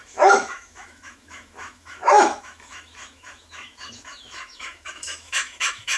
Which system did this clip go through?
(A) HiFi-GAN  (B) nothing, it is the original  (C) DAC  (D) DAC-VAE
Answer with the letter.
D